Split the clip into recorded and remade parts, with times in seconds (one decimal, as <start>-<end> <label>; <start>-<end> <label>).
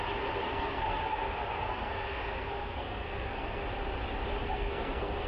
0.0-0.4 recorded; 0.4-3.6 remade; 3.6-4.4 recorded; 4.4-5.3 remade